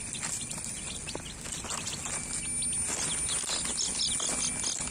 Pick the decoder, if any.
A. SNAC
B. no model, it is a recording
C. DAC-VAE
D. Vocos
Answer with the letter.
B